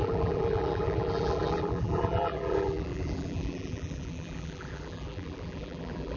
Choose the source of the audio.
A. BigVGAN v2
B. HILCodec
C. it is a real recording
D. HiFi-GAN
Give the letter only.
A